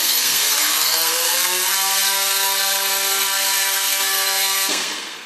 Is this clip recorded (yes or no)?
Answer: no